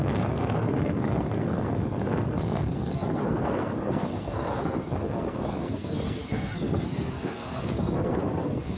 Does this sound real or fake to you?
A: fake